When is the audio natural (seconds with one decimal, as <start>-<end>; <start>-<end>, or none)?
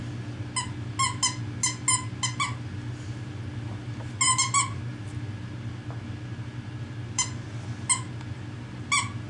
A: 0.0-9.3